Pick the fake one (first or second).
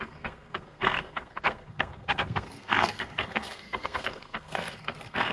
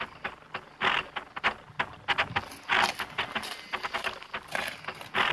first